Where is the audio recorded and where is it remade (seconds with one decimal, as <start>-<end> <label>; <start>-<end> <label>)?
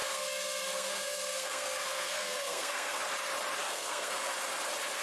0.0-3.0 remade; 3.0-3.6 recorded; 3.6-4.3 remade; 4.3-5.0 recorded